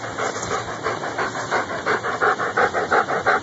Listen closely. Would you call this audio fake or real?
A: real